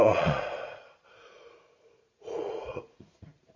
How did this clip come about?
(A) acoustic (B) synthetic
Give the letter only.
B